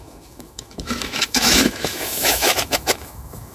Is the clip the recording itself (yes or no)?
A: no